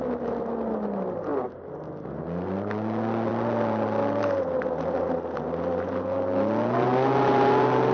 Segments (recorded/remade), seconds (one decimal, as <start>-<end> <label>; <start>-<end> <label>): 0.0-7.9 recorded